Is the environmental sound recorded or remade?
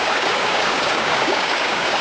remade